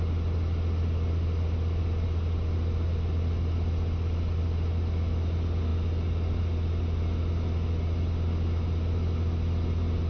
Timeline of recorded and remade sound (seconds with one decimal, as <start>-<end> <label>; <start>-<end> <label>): 0.0-10.1 recorded